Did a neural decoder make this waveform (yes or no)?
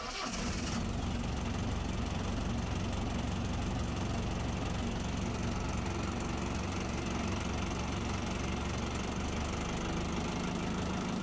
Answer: no